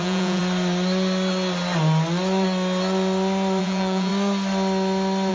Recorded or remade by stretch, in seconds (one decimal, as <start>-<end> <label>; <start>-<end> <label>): 0.0-0.4 remade; 0.4-3.6 recorded; 3.6-4.1 remade; 4.1-5.3 recorded